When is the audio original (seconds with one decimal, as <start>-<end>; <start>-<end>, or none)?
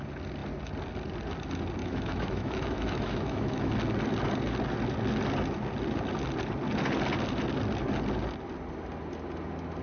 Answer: 0.0-1.8; 3.7-9.8